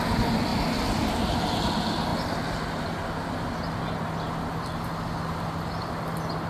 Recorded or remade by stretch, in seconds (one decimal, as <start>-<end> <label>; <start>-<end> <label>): 0.0-6.5 recorded